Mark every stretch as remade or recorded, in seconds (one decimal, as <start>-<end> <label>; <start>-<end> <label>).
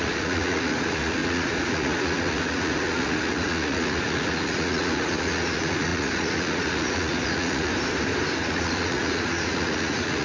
0.0-7.7 remade; 7.7-8.4 recorded; 8.4-10.2 remade